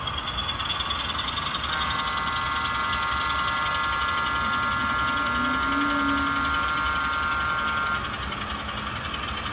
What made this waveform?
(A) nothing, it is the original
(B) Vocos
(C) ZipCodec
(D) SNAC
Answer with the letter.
A